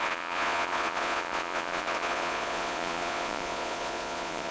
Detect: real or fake fake